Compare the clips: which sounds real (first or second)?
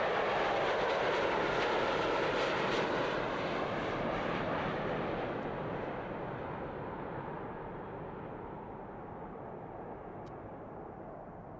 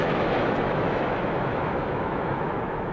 first